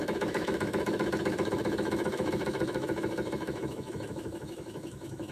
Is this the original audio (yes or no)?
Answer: no